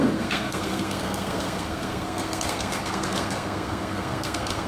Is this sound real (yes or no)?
no